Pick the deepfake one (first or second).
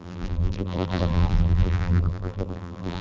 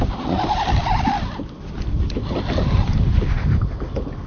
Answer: first